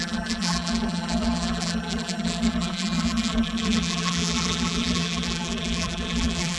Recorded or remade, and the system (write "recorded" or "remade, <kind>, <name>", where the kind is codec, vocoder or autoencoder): remade, vocoder, BigVGAN v2